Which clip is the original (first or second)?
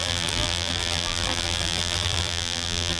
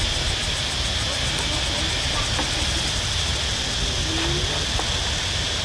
second